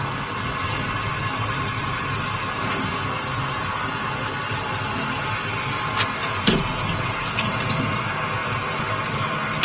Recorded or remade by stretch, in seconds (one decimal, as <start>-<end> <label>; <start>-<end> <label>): 0.0-6.2 recorded; 6.2-7.6 remade; 7.6-9.6 recorded